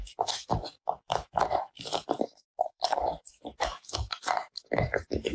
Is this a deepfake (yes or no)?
yes